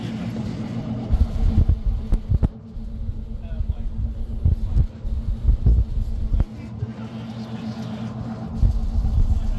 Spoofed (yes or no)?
no